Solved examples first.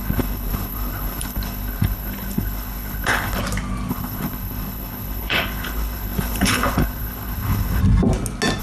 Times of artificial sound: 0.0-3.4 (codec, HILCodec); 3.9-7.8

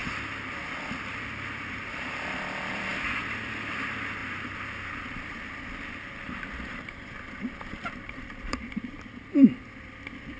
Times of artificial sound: 0.9-2.9 (vocoder, BigVGAN v2); 3.7-10.4

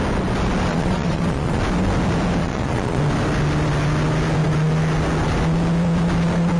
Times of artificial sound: 0.7-1.6 (vocoder, Vocos); 2.4-3.0

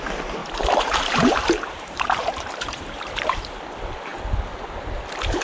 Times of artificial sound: 0.4-3.6 (vocoder, BigVGAN v2)